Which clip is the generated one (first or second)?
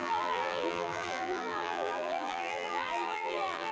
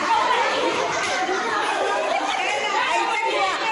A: first